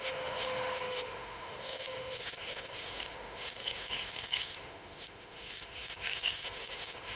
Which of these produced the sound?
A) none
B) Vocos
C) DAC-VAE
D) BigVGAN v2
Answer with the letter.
C